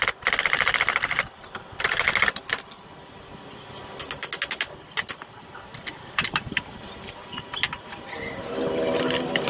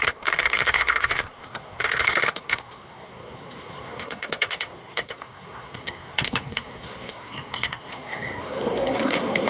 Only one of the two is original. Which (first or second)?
first